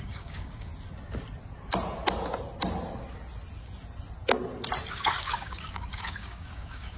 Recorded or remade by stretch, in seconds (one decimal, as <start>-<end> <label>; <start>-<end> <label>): 0.0-0.7 remade; 0.7-4.9 recorded; 4.9-7.0 remade